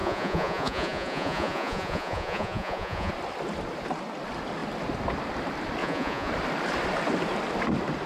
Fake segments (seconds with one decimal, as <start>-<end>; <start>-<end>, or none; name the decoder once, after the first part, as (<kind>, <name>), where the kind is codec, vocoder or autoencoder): 0.0-3.1 (vocoder, Vocos); 5.8-6.3

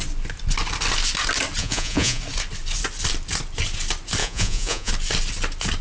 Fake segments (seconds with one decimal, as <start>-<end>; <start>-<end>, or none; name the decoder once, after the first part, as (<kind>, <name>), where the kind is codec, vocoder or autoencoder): 1.6-2.2 (vocoder, Vocos); 4.2-4.9

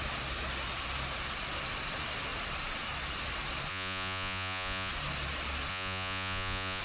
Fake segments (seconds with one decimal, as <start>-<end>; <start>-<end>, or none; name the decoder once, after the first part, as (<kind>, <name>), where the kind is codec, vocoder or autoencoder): 3.7-4.9 (vocoder, Vocos); 5.7-6.8

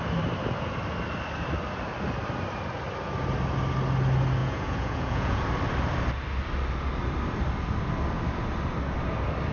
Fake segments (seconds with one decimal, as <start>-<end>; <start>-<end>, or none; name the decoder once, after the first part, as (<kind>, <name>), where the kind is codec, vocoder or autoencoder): 4.4-5.4 (vocoder, Vocos)